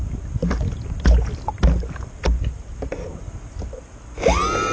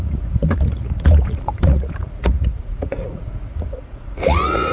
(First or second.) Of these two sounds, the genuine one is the first